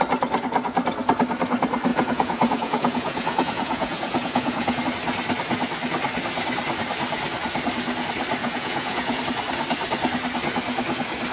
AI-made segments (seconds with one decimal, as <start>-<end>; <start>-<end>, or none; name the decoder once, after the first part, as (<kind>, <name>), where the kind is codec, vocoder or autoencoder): 1.9-4.8 (vocoder, Vocos); 8.4-9.2

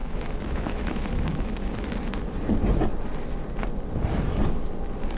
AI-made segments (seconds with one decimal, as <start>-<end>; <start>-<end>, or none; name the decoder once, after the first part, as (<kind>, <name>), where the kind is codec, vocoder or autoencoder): 0.0-1.7 (autoencoder, DAC-VAE)

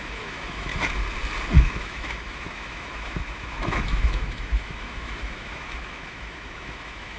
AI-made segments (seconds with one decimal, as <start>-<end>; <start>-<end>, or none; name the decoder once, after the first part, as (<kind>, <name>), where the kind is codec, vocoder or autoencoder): 0.0-0.7 (autoencoder, DAC-VAE); 1.6-7.2

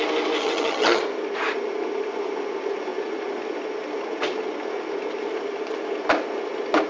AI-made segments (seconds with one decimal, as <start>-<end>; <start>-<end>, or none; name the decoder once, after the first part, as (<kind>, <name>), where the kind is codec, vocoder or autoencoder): 0.4-1.0 (vocoder, HiFi-GAN)

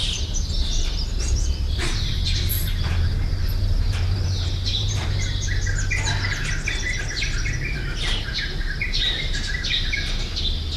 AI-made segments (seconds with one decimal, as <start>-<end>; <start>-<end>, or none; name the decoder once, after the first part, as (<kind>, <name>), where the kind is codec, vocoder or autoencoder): 0.0-5.1 (vocoder, BigVGAN v2)